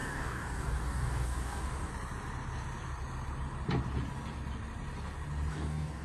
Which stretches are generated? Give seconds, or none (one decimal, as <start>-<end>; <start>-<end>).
0.0-1.9; 5.5-6.0